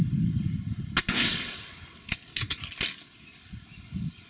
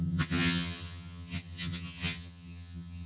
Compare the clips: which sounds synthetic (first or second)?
second